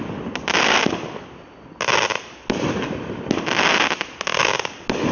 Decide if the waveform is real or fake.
real